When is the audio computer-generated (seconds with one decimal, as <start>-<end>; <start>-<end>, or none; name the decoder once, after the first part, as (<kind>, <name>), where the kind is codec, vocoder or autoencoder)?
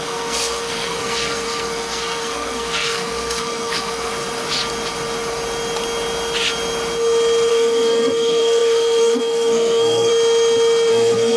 0.0-4.1 (codec, SNAC); 7.5-10.1; 10.9-11.4